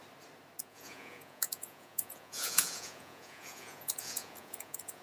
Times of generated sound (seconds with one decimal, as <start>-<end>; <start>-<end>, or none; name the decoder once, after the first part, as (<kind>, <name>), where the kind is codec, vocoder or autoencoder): 0.6-5.0 (vocoder, Vocos)